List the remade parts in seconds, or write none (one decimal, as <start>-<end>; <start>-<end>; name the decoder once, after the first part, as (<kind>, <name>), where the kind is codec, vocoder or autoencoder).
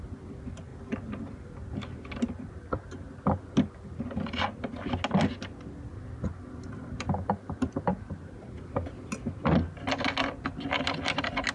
5.9-8.1 (vocoder, BigVGAN v2)